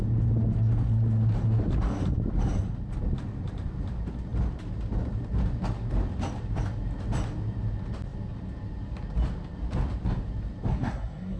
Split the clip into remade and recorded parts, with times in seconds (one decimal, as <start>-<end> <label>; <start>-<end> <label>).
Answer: 0.0-10.7 recorded; 10.7-11.4 remade